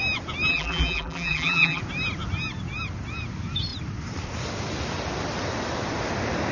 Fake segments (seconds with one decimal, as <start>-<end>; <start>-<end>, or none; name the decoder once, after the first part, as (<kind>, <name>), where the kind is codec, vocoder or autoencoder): 0.5-1.8 (vocoder, BigVGAN v2)